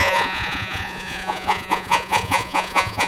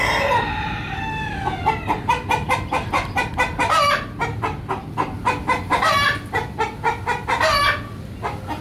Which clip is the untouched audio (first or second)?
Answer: second